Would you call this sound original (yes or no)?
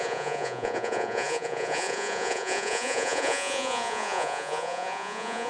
no